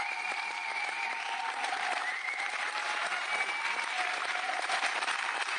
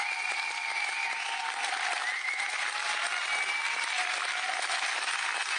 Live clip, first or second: second